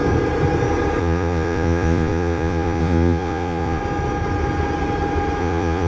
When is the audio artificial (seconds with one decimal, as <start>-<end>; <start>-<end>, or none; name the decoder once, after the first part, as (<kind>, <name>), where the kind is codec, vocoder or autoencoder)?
1.0-3.8 (vocoder, Vocos); 5.4-5.9